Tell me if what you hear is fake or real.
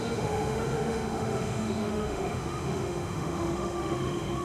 fake